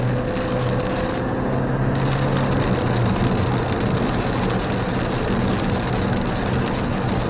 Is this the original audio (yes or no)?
yes